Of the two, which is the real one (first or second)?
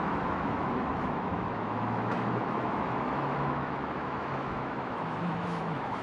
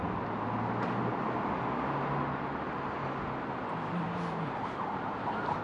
second